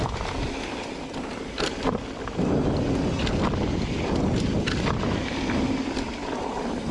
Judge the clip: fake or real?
real